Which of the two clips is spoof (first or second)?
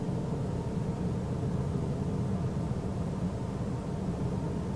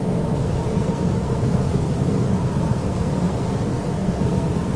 second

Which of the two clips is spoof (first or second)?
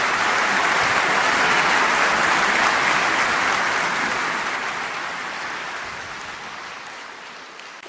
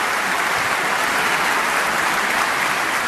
second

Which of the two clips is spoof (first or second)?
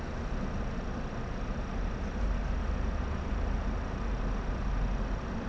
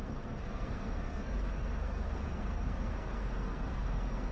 second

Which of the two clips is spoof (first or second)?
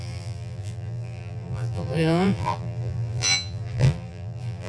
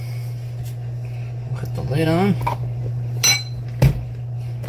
first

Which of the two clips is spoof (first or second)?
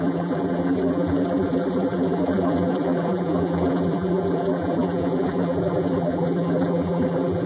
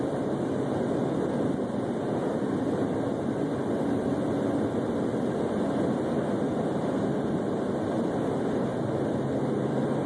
first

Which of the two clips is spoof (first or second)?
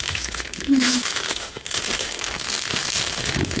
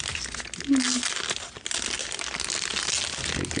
first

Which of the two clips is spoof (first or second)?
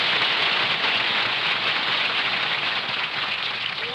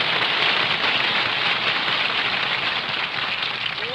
first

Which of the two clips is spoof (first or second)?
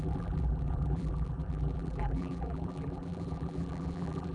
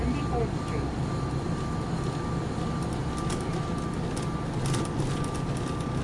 first